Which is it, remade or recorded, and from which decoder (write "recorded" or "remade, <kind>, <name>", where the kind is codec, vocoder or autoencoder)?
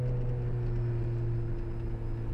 recorded